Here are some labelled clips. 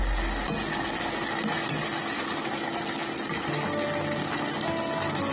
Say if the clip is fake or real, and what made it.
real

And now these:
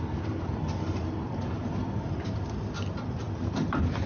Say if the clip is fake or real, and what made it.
fake, vocoder, BigVGAN v2